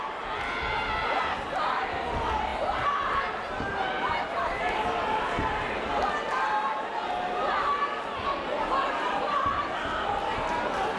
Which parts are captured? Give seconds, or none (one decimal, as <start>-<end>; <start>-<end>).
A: 0.0-11.0